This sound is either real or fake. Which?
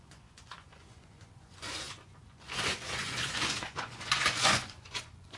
fake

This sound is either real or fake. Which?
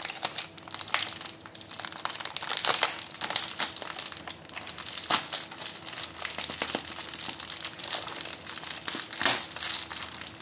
real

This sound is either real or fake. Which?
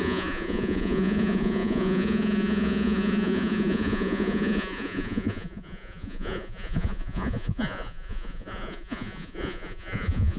fake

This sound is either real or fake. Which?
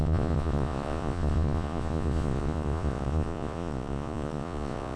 fake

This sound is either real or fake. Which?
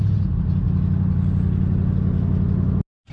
real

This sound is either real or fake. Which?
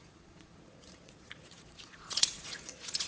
fake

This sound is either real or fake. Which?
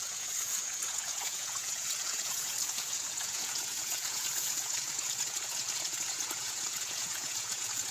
fake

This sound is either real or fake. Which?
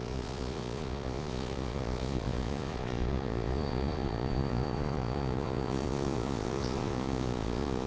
fake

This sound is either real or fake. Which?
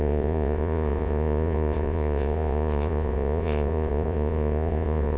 fake